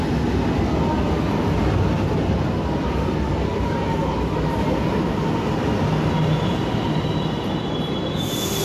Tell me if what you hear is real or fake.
real